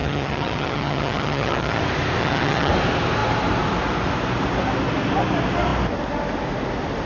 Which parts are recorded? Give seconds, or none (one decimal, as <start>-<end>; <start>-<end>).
1.8-2.2; 2.7-7.1